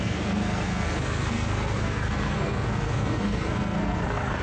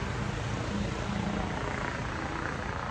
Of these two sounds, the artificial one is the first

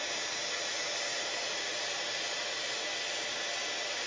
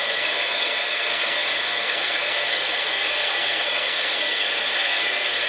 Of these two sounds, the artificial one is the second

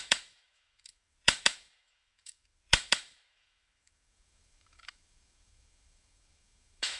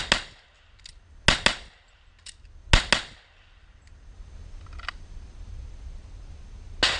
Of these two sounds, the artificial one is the first